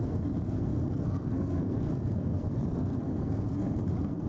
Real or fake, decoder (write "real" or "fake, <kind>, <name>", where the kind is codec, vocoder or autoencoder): fake, codec, SNAC